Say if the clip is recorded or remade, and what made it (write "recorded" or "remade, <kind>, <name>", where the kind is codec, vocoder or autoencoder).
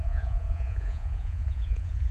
remade, vocoder, Vocos